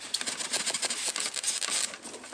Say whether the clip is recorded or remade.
recorded